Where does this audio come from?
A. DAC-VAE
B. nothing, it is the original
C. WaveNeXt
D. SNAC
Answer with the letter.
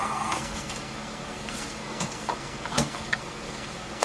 D